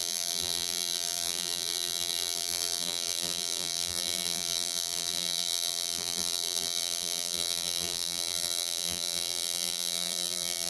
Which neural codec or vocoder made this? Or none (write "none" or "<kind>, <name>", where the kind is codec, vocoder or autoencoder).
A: vocoder, BigVGAN v2